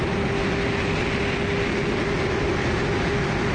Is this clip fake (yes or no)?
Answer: no